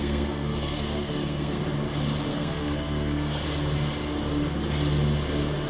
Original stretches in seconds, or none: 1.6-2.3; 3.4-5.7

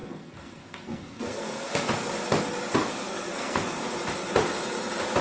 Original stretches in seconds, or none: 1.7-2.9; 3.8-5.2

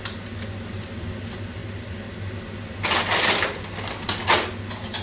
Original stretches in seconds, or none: 0.0-5.0

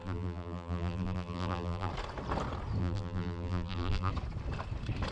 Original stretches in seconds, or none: 1.9-2.8; 4.1-5.1

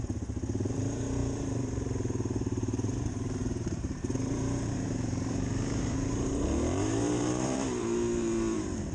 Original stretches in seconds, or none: none

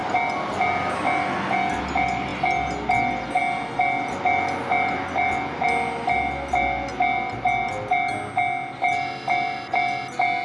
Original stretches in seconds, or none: 0.0-10.4